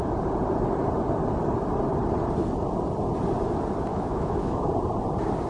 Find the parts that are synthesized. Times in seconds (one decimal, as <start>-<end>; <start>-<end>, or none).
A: 3.9-4.7